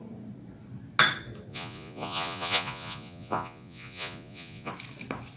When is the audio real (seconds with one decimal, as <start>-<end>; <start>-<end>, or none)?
0.0-1.5; 4.7-5.4